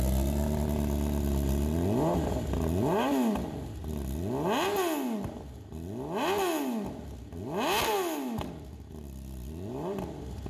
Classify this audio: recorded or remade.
recorded